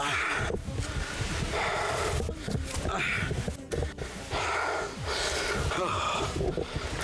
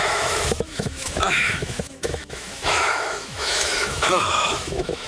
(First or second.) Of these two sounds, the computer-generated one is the second